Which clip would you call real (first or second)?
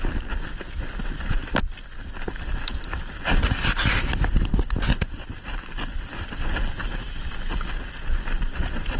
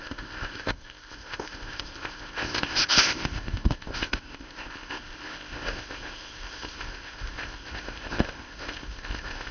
first